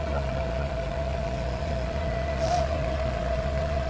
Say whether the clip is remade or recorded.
remade